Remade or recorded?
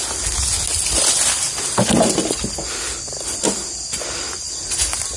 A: recorded